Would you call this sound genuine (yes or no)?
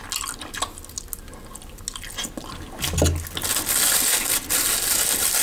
yes